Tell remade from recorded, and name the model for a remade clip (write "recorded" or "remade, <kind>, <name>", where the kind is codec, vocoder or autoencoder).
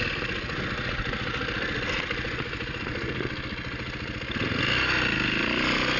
recorded